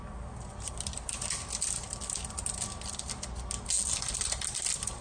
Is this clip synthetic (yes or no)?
no